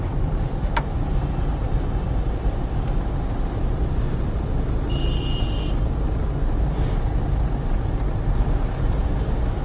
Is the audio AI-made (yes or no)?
no